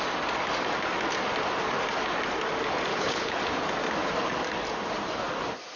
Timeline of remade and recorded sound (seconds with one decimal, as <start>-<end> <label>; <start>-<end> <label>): 0.0-2.9 recorded; 2.9-3.4 remade; 3.4-5.8 recorded